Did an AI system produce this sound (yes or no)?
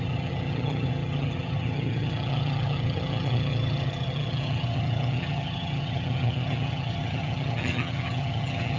yes